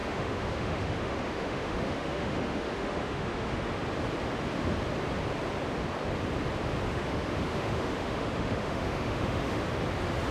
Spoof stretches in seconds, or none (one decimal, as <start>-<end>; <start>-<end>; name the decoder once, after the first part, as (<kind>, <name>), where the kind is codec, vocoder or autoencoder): 0.0-3.7 (autoencoder, DAC-VAE); 6.9-9.6